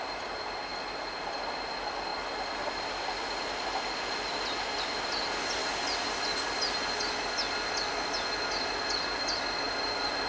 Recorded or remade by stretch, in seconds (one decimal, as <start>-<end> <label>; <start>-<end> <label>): 0.0-10.3 recorded